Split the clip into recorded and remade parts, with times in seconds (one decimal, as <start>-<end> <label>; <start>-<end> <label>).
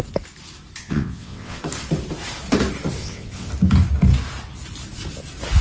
0.0-0.8 recorded; 0.8-1.6 remade; 1.6-3.0 recorded; 3.0-3.5 remade; 3.5-5.6 recorded